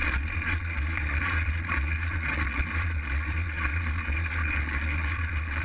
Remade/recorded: remade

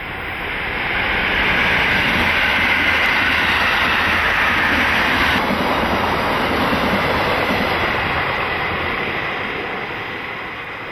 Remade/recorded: recorded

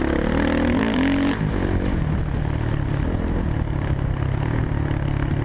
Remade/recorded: recorded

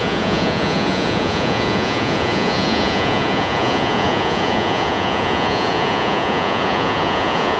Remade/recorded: remade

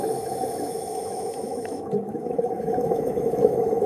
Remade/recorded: remade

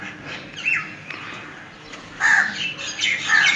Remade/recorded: recorded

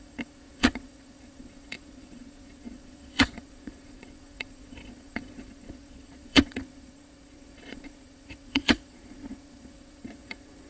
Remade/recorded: remade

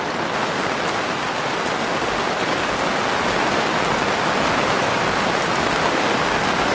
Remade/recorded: recorded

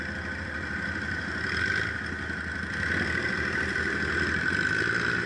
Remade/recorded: recorded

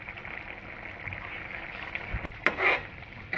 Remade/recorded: recorded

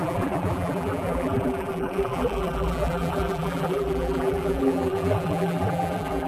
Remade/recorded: remade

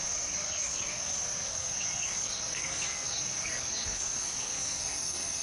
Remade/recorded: remade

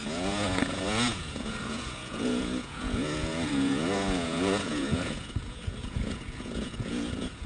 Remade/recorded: remade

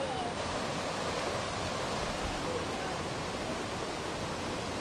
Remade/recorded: recorded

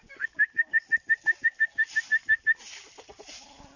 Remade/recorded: recorded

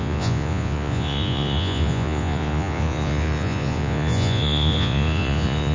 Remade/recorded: remade